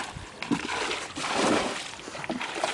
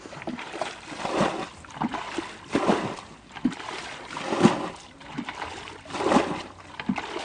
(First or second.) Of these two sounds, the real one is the first